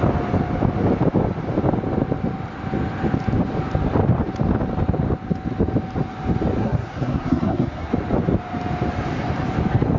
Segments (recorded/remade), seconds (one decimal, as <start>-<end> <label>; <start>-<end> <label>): 0.0-6.6 recorded; 6.6-7.9 remade; 7.9-10.0 recorded